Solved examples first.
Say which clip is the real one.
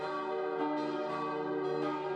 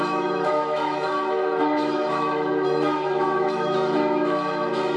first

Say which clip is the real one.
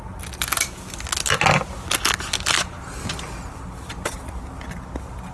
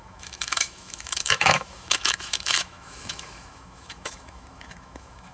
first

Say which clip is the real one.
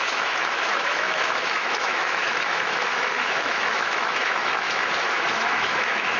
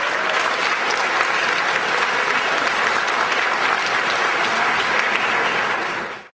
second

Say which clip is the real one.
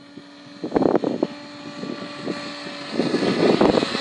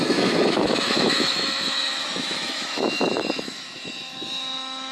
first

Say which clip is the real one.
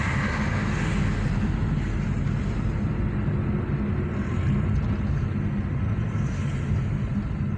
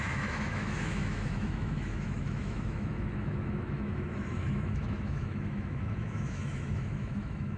first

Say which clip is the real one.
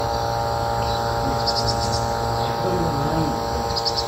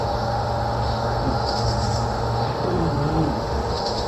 first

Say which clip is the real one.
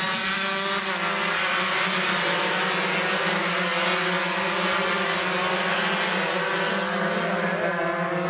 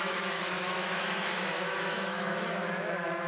first